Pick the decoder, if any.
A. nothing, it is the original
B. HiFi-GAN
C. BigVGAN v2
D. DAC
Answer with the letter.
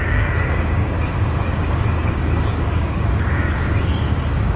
D